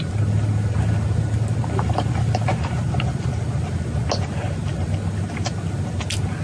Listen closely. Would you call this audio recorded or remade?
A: recorded